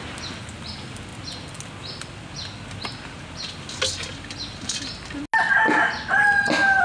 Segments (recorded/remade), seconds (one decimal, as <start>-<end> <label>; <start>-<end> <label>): 0.0-6.8 recorded